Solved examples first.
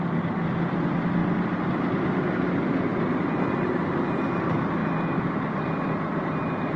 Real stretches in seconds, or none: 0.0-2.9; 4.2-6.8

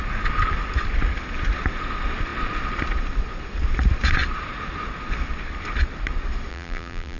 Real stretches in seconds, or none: 0.0-6.5

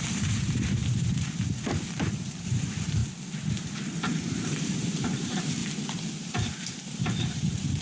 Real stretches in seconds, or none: 3.0-3.5; 5.6-6.2

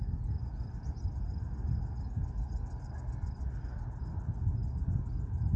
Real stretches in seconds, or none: 0.0-5.6

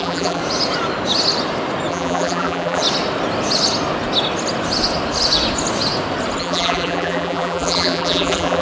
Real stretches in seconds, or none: 0.4-1.9; 2.8-6.4

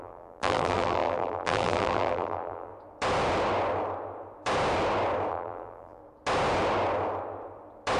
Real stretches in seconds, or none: 2.7-5.3; 6.0-8.0

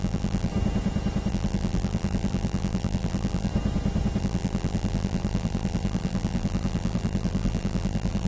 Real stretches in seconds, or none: 0.5-1.3; 3.5-4.2

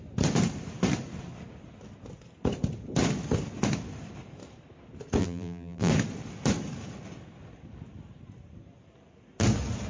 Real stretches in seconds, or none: 0.0-5.2; 5.9-9.9